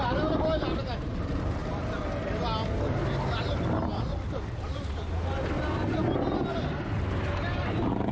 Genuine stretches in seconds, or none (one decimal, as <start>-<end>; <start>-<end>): 0.0-1.6; 2.1-8.1